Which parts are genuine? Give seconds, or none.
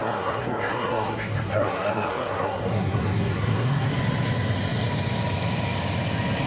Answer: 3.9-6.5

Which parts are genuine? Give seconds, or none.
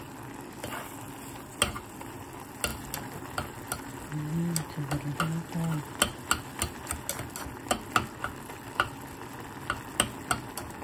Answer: 0.0-10.8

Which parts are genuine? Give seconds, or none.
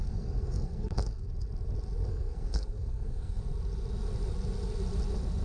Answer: 1.3-2.1; 3.4-5.4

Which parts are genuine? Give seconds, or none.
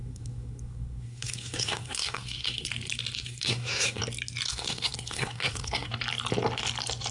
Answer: 2.7-3.2; 4.0-4.5; 5.9-7.1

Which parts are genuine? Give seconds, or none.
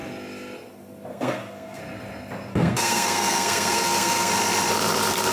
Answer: 0.0-1.1; 1.8-2.5; 4.3-5.3